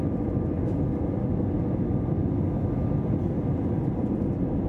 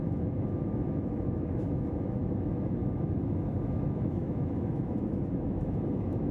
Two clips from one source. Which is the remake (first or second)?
second